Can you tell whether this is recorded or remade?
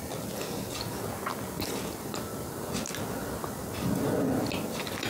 recorded